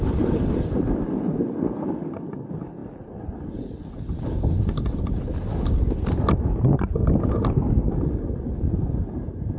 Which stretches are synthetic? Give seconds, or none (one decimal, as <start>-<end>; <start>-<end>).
none